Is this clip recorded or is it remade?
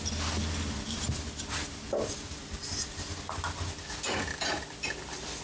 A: recorded